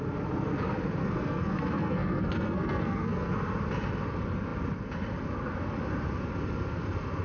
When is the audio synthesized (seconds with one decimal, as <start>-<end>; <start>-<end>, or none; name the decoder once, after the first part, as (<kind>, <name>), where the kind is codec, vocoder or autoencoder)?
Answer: 1.0-3.3 (codec, SNAC)